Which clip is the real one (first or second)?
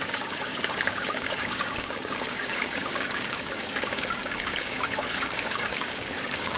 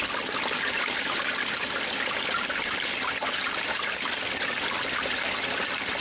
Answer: second